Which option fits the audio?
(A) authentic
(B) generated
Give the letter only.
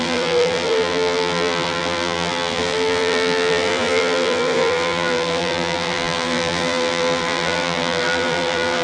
B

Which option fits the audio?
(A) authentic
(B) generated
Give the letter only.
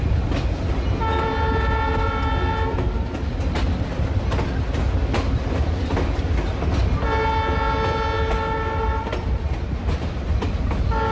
A